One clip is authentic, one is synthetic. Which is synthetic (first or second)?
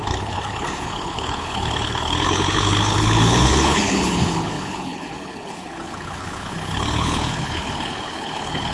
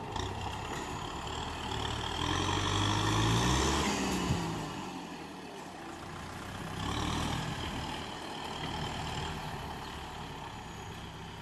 first